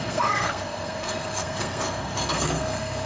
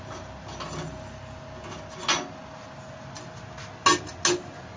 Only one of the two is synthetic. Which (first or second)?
first